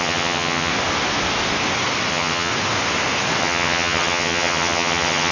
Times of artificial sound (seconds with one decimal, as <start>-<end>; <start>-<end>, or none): 0.0-0.7; 2.1-2.5; 3.4-5.3